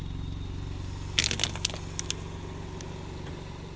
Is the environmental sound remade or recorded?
recorded